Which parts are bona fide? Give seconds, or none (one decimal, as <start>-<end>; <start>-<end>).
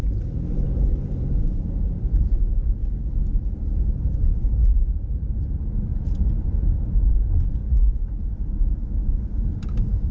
2.8-3.4